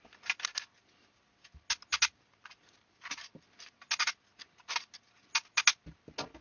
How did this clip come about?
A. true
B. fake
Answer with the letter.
A